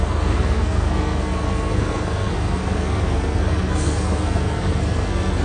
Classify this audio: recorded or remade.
remade